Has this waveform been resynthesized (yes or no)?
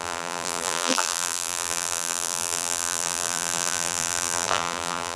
yes